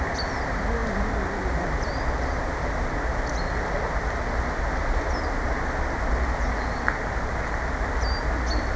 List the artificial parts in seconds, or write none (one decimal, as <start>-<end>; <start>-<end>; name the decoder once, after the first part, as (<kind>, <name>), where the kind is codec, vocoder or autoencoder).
none